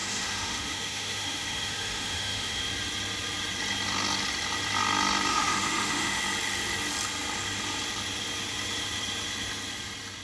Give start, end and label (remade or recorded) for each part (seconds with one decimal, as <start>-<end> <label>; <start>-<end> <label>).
0.0-2.6 remade; 2.6-5.3 recorded; 5.3-6.2 remade; 6.2-10.2 recorded